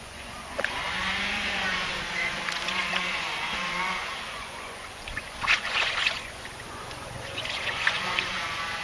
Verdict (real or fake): fake